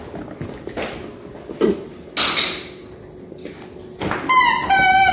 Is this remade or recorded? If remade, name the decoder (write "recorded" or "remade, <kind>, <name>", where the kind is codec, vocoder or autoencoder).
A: recorded